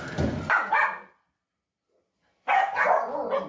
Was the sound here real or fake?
real